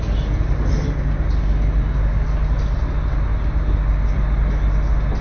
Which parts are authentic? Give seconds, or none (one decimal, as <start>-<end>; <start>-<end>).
0.0-5.2